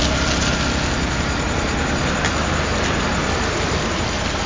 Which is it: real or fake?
real